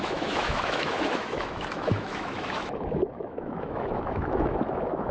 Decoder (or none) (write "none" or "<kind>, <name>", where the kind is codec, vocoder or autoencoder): autoencoder, DAC-VAE